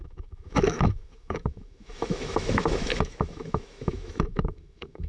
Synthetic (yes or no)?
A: yes